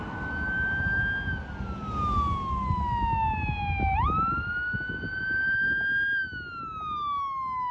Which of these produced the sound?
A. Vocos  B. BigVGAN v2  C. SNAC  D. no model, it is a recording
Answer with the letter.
D